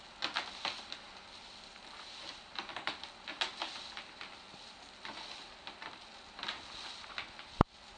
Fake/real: real